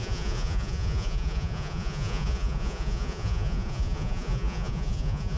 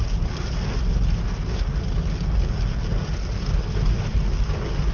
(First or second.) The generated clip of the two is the first